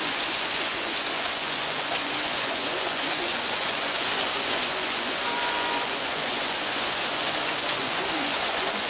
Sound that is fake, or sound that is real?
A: fake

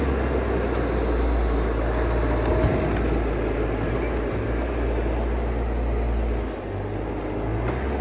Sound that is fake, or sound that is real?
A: real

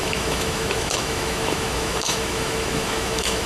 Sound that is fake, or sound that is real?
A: fake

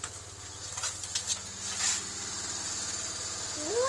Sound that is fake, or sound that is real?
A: real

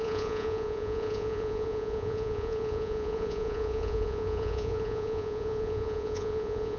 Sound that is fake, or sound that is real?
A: fake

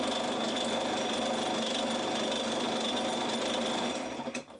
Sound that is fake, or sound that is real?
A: real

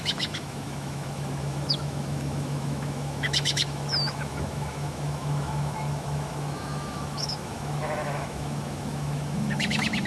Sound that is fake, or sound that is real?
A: fake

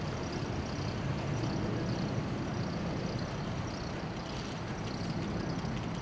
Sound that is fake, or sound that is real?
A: real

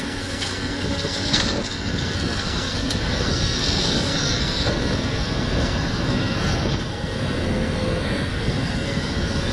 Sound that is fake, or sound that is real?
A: fake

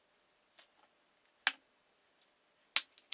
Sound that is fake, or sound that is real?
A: real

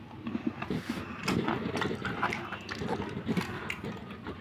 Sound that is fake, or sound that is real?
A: real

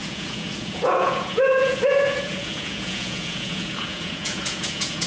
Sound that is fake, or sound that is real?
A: fake